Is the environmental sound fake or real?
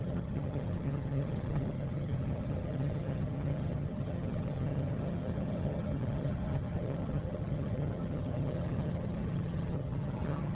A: fake